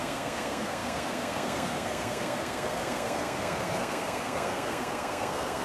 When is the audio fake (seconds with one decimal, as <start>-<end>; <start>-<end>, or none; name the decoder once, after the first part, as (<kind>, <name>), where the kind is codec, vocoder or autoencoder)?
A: 0.0-5.6 (codec, SNAC)